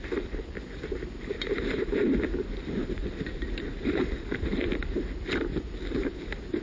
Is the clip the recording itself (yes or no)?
yes